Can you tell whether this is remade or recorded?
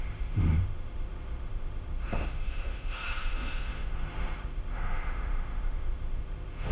remade